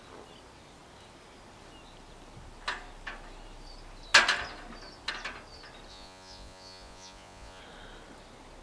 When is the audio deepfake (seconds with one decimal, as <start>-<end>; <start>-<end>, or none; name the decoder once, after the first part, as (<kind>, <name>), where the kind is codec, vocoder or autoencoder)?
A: 5.9-7.6 (vocoder, Vocos)